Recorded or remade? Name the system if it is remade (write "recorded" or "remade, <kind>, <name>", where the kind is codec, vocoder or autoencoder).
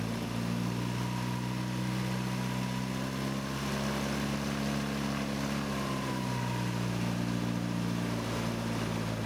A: recorded